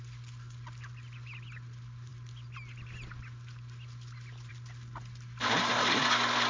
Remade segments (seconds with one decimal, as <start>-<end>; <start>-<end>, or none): none